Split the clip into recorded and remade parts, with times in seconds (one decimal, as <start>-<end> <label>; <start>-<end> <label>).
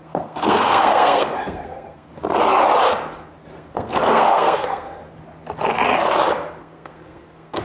0.0-2.1 remade; 2.1-3.6 recorded; 3.6-5.0 remade; 5.0-6.6 recorded; 6.6-7.6 remade